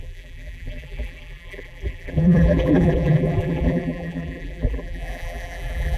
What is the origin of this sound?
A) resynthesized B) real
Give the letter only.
A